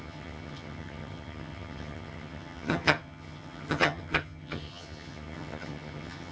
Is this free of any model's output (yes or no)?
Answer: no